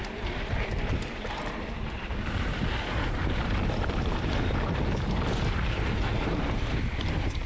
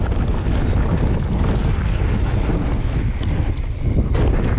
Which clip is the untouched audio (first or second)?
second